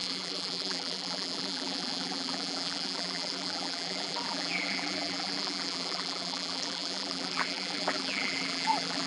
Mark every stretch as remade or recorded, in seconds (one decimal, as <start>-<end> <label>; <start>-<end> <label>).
0.0-9.1 remade